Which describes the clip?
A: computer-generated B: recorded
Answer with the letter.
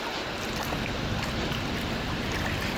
B